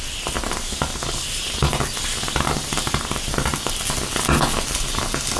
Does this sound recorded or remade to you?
recorded